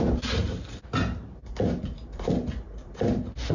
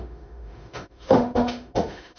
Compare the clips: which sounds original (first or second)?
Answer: first